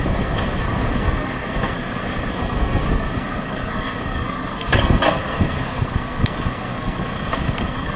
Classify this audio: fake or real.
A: fake